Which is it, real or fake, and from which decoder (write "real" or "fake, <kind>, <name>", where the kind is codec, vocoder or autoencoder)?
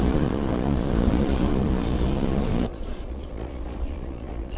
fake, vocoder, Vocos